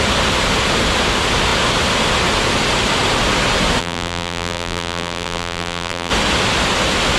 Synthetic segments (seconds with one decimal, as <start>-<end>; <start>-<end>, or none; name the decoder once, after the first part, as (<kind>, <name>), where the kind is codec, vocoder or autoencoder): 3.8-6.1 (vocoder, BigVGAN v2)